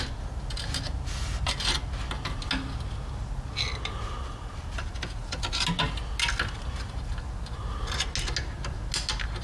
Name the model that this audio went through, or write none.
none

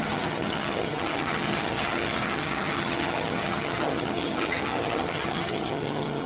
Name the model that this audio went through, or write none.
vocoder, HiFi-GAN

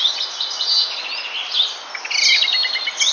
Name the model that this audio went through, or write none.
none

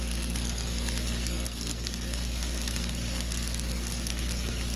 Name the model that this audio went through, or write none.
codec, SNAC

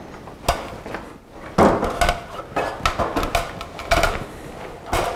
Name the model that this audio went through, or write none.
none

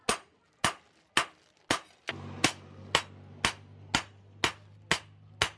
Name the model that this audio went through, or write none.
none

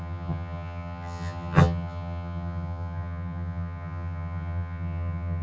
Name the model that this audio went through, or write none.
vocoder, HiFi-GAN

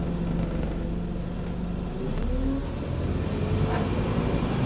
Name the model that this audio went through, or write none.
none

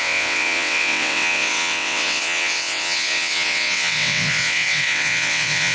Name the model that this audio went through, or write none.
vocoder, WaveNeXt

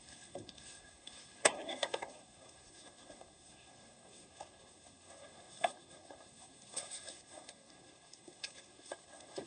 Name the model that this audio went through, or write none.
codec, SNAC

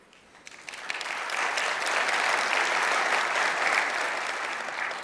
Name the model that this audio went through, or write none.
none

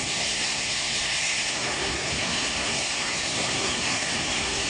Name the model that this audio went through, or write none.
codec, SNAC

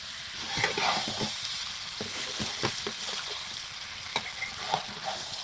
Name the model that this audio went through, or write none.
none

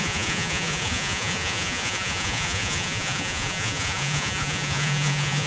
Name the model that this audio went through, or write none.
vocoder, Vocos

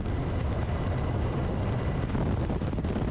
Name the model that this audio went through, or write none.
none